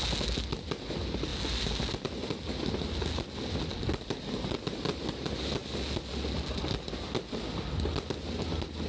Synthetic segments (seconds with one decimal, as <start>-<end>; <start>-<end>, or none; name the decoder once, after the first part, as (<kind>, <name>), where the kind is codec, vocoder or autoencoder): none